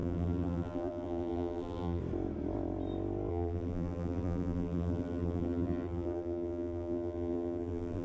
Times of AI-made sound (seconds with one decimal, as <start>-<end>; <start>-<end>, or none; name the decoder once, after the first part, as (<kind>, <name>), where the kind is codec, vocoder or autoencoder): 0.0-2.0 (vocoder, BigVGAN v2); 3.3-8.0